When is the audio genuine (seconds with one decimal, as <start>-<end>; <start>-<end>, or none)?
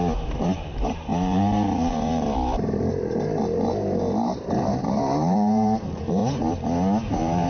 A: 6.2-7.1